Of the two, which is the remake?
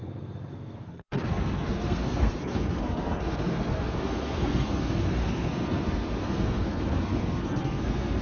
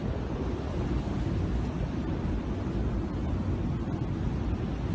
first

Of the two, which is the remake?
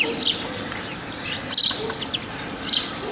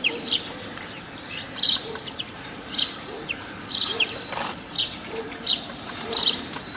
second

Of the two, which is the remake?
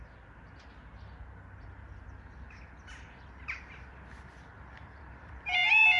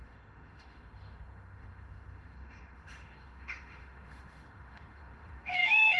second